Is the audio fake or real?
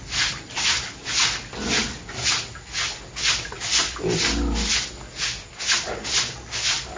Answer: real